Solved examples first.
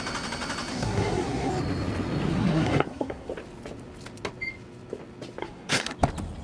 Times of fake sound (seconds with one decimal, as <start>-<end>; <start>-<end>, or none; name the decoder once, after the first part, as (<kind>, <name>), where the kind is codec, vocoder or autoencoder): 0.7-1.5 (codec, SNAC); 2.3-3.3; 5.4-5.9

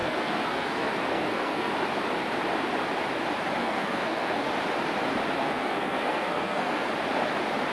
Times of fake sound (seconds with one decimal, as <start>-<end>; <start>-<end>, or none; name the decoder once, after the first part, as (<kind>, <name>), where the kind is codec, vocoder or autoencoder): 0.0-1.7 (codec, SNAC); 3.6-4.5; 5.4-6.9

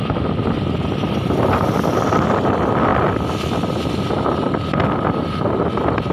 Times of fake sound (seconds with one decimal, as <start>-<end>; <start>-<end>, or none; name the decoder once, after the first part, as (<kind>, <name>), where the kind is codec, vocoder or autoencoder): none

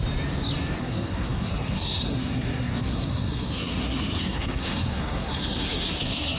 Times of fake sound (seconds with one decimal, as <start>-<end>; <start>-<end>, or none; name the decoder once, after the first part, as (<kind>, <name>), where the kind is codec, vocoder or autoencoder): 0.8-6.4 (codec, SNAC)